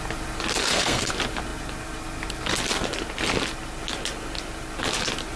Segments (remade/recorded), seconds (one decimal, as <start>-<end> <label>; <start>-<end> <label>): 0.0-0.6 recorded; 0.6-1.1 remade; 1.1-5.4 recorded